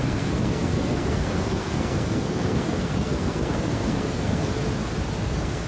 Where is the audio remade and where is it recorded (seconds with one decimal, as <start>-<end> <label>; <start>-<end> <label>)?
0.0-4.5 remade; 4.5-5.1 recorded; 5.1-5.7 remade